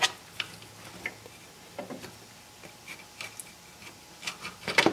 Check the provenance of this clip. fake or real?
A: real